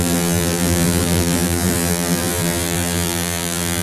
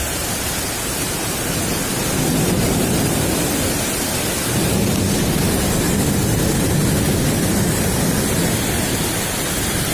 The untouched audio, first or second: second